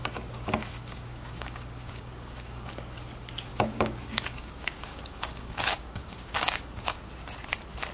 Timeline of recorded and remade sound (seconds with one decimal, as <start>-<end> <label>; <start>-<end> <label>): 0.0-2.7 remade; 2.7-3.5 recorded; 3.5-7.0 remade; 7.0-7.9 recorded